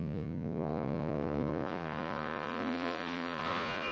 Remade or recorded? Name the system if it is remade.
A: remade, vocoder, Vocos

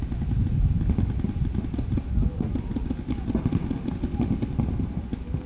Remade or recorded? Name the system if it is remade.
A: recorded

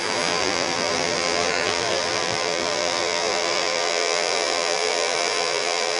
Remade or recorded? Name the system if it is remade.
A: remade, vocoder, BigVGAN v2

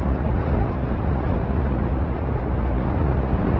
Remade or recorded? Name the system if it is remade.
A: remade, vocoder, Vocos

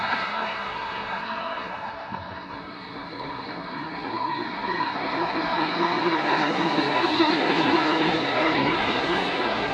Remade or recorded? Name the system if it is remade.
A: remade, codec, SNAC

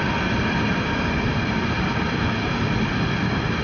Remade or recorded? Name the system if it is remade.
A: recorded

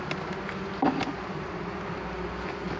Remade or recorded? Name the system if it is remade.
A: recorded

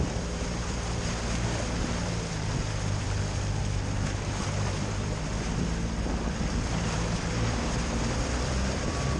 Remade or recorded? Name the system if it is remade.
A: remade, vocoder, BigVGAN v2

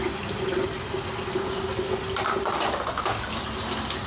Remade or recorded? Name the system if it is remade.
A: recorded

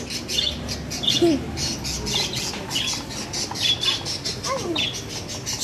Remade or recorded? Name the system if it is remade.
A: recorded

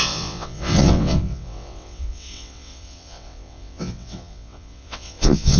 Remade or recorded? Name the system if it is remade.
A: remade, vocoder, WaveNeXt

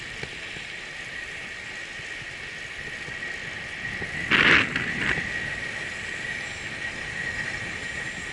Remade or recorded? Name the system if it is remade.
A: recorded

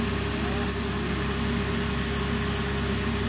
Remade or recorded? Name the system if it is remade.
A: recorded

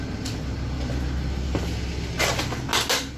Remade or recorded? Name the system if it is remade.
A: recorded